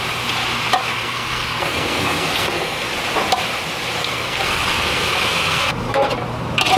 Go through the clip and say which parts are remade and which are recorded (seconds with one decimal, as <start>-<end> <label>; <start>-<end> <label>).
0.0-0.8 recorded; 0.8-2.9 remade; 2.9-4.0 recorded; 4.0-6.1 remade; 6.1-6.8 recorded